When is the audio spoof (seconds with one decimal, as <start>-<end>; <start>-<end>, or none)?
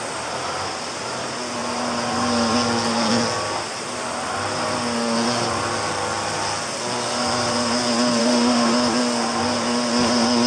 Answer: 8.2-8.7